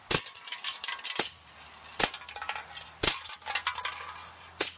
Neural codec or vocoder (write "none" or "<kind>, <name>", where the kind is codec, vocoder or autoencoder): none